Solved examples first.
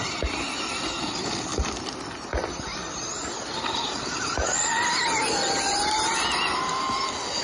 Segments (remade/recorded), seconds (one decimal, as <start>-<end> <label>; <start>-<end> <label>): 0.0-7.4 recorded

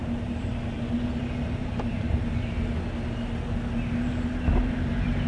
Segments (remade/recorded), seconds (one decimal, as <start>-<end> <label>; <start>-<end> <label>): 0.0-0.5 remade; 0.5-1.6 recorded; 1.6-2.6 remade; 2.6-5.3 recorded

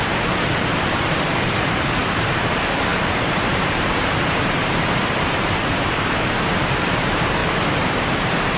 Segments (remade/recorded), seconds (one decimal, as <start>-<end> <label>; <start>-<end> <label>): 0.0-7.4 remade; 7.4-8.2 recorded; 8.2-8.6 remade

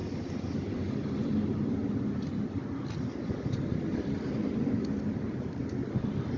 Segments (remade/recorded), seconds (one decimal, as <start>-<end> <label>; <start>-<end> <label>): 0.0-0.9 remade; 0.9-1.8 recorded; 1.8-5.6 remade; 5.6-6.4 recorded

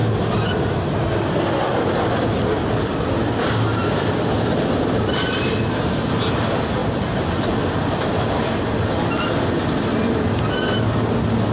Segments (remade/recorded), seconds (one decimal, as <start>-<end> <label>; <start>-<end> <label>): 0.0-3.8 recorded; 3.8-5.5 remade; 5.5-6.8 recorded; 6.8-8.4 remade; 8.4-11.5 recorded

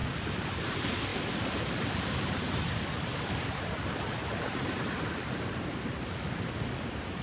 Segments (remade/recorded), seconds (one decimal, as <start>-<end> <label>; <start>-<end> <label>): 0.0-0.7 recorded; 0.7-1.1 remade; 1.1-2.3 recorded; 2.3-7.2 remade